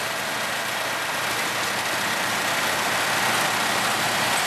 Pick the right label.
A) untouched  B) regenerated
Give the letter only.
A